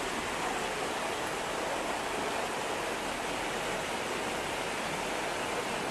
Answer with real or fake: real